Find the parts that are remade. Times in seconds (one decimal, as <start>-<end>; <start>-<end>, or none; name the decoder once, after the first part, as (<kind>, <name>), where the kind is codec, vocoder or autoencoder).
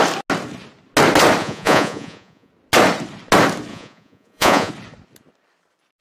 1.4-2.5 (vocoder, Vocos); 3.7-4.7